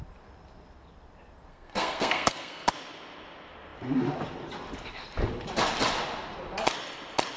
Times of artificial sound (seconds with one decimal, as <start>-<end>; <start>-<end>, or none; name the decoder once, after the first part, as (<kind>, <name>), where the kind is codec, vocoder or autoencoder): 1.5-2.7 (codec, SNAC)